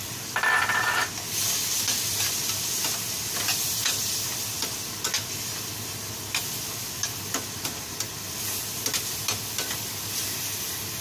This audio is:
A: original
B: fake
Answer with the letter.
A